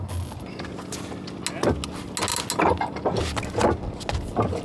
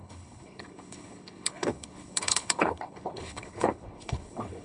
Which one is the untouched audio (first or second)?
first